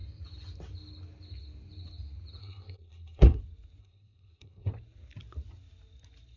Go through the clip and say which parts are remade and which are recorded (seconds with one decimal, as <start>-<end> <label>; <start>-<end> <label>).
0.0-2.4 recorded; 2.4-3.4 remade; 3.4-3.8 recorded; 3.8-4.7 remade; 4.7-6.4 recorded